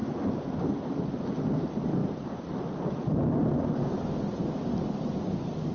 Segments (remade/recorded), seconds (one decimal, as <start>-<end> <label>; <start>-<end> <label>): 0.0-0.7 remade; 0.7-2.0 recorded; 2.0-2.9 remade; 2.9-5.7 recorded